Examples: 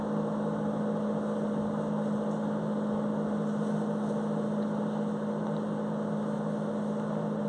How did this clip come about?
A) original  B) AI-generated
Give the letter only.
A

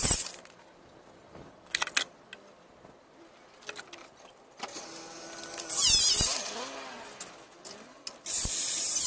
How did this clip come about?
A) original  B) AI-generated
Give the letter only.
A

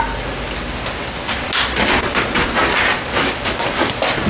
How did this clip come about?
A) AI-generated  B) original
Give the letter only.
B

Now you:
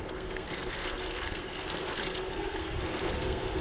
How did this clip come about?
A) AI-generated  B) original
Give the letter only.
A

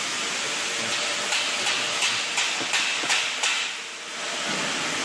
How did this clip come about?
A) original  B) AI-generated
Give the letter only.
A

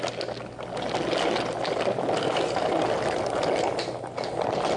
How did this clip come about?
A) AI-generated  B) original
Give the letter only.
B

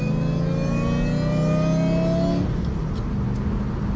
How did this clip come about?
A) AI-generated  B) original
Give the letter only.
B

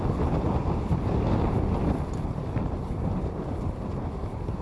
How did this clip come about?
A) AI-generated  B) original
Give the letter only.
B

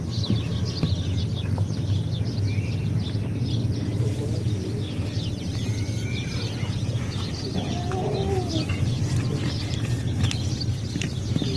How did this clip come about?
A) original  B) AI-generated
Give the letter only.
A